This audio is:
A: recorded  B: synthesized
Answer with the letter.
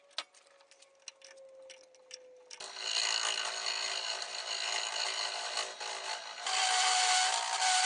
A